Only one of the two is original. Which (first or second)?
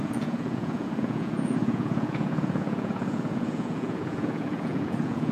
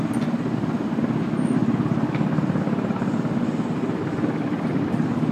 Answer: second